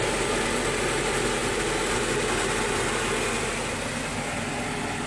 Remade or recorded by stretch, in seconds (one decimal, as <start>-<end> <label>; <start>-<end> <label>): 0.0-5.1 recorded